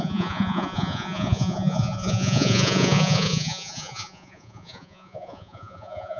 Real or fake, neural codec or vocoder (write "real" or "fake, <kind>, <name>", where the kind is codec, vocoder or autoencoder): fake, vocoder, Vocos